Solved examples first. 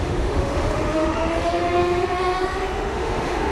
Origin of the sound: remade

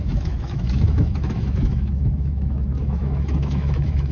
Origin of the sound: remade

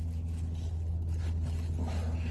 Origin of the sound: recorded